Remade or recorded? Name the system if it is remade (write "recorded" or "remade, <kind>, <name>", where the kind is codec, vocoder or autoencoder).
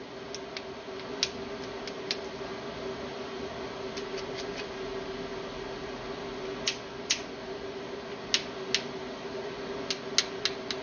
recorded